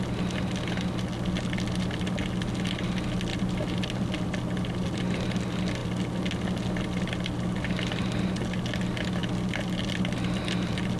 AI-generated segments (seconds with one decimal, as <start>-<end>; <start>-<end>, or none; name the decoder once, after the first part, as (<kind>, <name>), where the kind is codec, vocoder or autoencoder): none